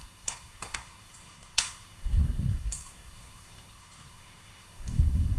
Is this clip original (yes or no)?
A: no